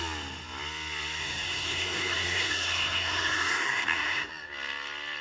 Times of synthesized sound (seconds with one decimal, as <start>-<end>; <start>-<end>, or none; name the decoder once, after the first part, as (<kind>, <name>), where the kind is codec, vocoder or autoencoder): 1.2-4.3 (codec, SNAC)